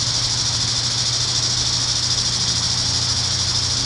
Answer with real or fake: real